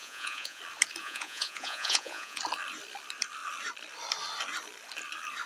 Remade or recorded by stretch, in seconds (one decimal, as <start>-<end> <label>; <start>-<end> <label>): 0.0-0.6 remade; 0.6-1.0 recorded; 1.0-2.4 remade; 2.4-5.5 recorded